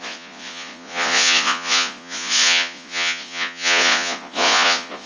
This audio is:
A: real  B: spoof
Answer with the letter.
B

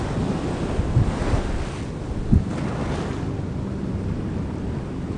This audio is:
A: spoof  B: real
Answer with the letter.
B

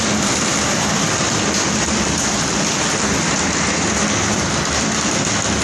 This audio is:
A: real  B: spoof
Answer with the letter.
B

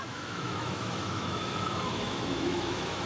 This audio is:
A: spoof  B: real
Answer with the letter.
A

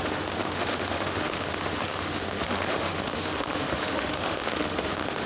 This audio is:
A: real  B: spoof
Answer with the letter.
B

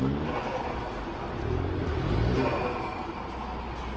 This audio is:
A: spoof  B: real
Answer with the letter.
B